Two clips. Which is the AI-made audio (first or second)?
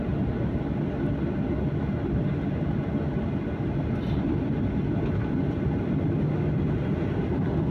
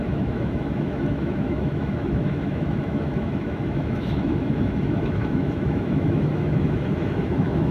second